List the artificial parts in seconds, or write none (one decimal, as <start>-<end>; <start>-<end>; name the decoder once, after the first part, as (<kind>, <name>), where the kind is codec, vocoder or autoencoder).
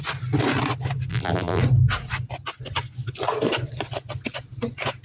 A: 1.1-1.6 (vocoder, BigVGAN v2)